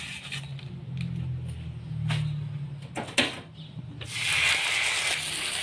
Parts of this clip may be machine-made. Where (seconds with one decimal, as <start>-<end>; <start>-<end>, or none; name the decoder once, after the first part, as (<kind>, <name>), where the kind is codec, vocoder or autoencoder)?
none